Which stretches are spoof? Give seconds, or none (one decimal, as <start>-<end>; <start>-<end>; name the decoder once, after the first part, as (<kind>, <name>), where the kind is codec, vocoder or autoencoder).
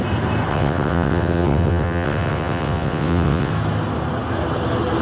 0.5-3.5 (vocoder, WaveNeXt)